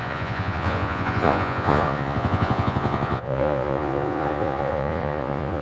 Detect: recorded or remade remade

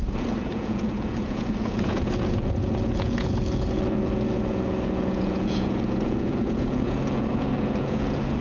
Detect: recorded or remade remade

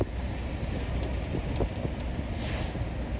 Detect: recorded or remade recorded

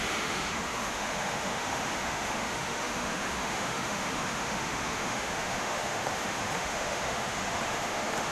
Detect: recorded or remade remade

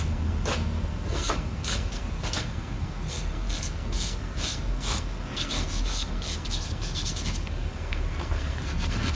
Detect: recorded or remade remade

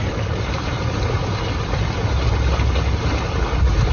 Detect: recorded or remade recorded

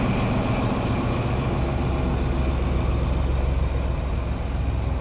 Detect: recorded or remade recorded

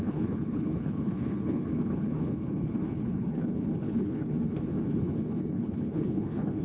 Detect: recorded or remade remade